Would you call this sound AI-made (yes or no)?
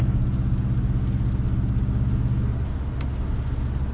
no